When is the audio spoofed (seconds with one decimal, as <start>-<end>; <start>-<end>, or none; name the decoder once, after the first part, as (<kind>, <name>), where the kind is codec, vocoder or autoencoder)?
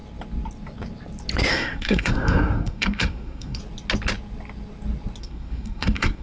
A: 1.5-3.6 (codec, SNAC); 5.2-6.2